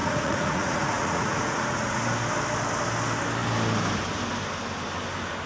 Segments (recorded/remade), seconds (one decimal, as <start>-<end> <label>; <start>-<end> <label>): 0.0-2.0 remade; 2.0-5.5 recorded